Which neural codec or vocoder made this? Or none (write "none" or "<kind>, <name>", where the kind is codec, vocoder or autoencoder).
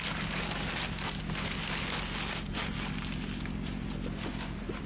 none